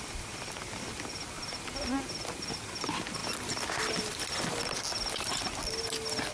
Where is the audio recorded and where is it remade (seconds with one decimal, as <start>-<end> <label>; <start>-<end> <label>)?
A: 0.0-6.3 recorded